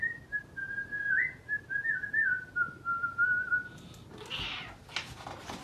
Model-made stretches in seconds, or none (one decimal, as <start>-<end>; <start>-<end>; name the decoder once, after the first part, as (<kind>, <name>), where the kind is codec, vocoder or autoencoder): none